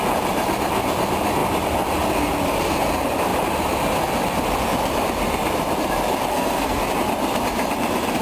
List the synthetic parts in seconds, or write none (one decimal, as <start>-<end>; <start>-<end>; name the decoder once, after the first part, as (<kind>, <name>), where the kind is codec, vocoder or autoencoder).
6.3-6.8 (codec, SNAC)